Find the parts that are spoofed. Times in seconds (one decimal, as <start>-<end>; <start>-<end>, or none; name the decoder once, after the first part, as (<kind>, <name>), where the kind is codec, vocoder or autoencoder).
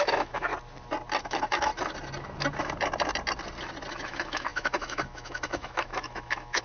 0.0-0.5 (autoencoder, DAC-VAE); 1.2-1.7; 3.9-6.6